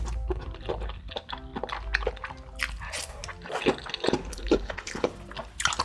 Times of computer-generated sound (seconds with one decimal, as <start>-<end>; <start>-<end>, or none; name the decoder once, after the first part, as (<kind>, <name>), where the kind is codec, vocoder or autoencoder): 4.3-5.1 (codec, HILCodec)